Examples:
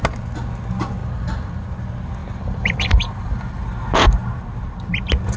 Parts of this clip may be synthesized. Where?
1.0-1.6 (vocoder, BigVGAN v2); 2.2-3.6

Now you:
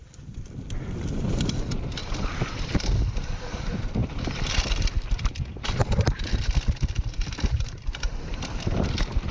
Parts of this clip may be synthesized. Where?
0.0-0.6 (vocoder, BigVGAN v2)

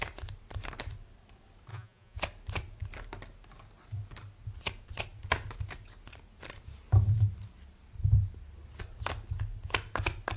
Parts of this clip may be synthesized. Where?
1.7-2.2 (vocoder, Vocos)

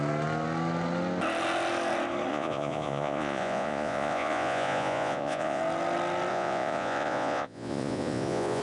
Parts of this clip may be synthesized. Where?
2.3-5.6 (vocoder, Vocos); 6.3-8.6

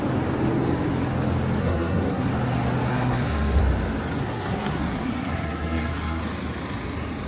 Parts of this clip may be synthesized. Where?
1.6-2.3 (codec, SNAC); 2.9-3.6; 4.2-6.2

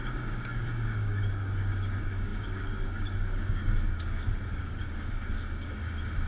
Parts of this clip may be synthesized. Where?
0.0-5.8 (codec, DAC)

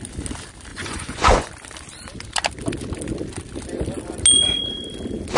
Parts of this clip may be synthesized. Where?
0.7-1.5 (vocoder, Vocos)